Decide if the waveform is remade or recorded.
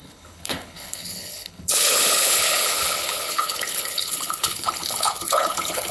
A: remade